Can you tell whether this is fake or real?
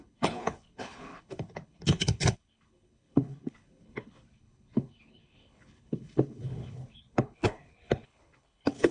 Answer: fake